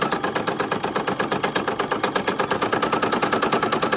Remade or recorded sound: recorded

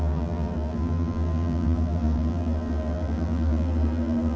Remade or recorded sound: remade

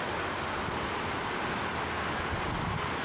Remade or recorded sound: recorded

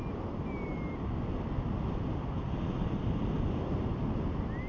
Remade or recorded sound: recorded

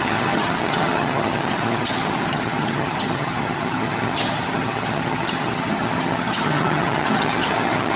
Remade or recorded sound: remade